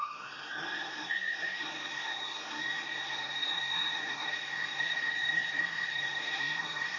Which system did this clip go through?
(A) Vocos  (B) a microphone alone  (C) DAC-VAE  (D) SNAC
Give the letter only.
D